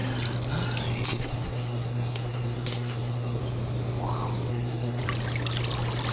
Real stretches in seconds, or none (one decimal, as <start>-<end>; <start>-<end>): 0.0-1.1; 3.4-4.5; 5.0-6.1